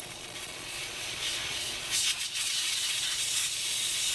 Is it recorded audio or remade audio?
remade